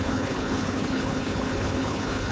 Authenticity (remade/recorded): remade